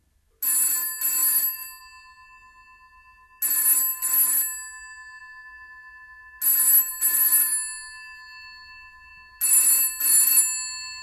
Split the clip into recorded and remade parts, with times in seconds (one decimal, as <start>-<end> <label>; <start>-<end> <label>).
0.0-11.0 recorded